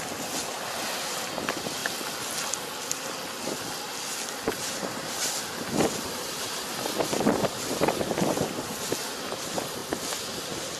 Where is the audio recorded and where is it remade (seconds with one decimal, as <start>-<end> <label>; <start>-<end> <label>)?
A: 0.0-10.8 recorded